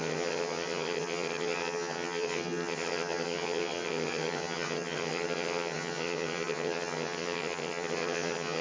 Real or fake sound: fake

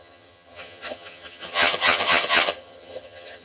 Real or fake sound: fake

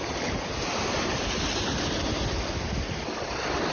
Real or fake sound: real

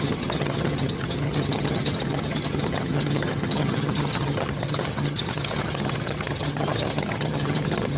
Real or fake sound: fake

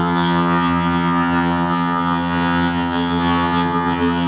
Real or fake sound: fake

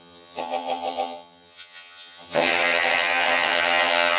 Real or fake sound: fake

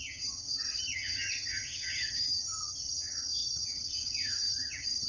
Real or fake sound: fake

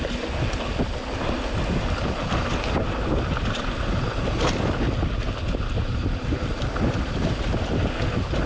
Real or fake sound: real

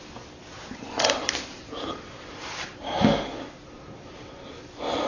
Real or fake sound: real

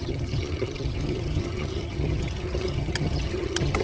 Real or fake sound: fake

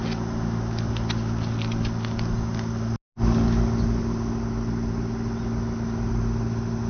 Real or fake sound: real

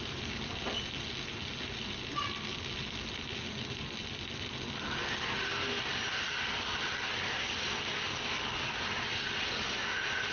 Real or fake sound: real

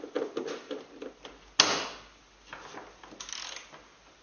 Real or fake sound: real